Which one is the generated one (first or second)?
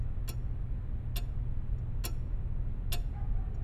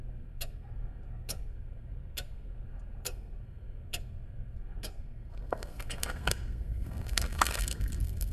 second